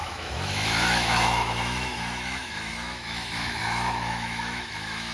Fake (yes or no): yes